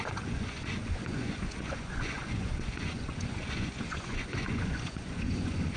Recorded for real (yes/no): no